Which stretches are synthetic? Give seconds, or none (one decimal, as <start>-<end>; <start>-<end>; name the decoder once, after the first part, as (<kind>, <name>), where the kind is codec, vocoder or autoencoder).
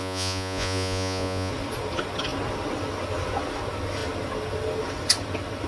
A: 0.0-1.5 (vocoder, Vocos)